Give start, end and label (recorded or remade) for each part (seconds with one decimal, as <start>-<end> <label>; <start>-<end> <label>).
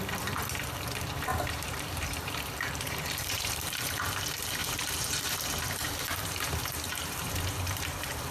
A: 0.0-1.3 recorded; 1.3-3.9 remade; 3.9-4.6 recorded; 4.6-8.3 remade